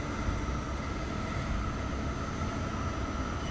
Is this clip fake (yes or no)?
no